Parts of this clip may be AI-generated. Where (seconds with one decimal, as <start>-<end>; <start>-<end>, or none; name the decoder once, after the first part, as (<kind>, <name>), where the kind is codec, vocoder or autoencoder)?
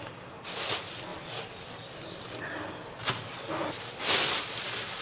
none